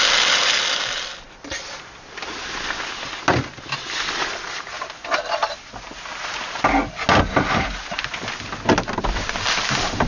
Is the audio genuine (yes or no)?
yes